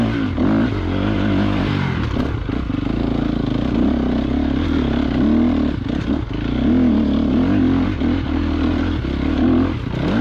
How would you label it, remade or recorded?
recorded